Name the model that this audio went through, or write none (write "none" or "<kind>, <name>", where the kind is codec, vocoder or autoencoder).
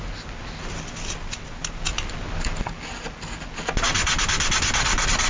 none